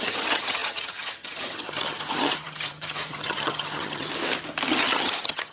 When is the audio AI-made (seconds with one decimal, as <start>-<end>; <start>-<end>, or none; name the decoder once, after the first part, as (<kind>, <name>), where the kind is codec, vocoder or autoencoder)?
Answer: 0.0-4.1 (vocoder, HiFi-GAN); 4.7-5.5